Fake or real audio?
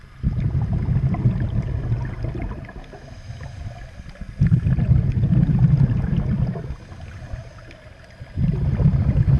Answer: real